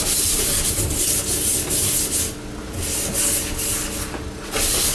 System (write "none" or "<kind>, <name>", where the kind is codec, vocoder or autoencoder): none